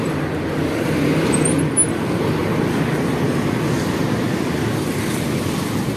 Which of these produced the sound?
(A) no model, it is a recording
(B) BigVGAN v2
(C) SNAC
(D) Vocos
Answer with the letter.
A